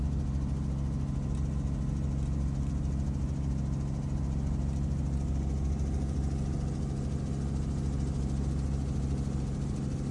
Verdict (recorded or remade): recorded